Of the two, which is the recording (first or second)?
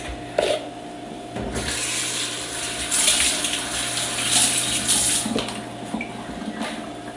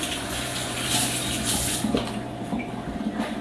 first